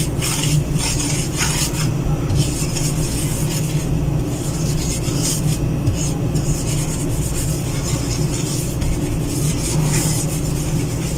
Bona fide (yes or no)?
yes